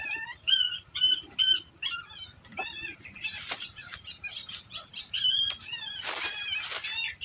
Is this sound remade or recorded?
recorded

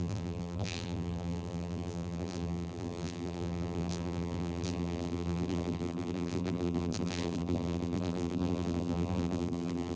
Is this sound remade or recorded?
remade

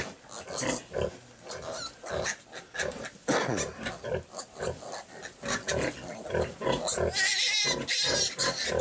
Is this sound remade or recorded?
recorded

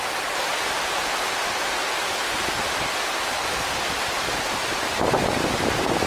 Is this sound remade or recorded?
recorded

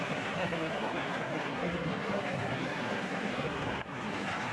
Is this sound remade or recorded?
remade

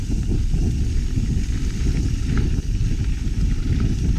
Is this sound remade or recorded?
recorded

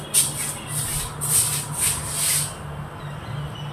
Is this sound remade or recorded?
recorded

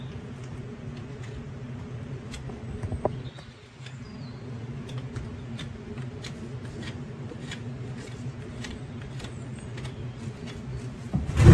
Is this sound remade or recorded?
recorded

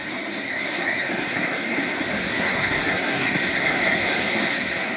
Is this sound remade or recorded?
remade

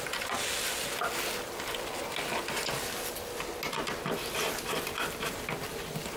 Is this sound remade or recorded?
recorded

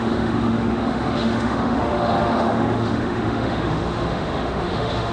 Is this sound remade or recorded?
remade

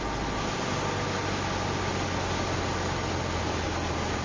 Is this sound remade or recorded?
recorded